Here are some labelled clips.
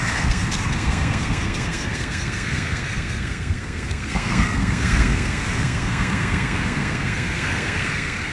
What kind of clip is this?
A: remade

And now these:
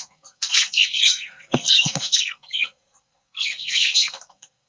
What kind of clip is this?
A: remade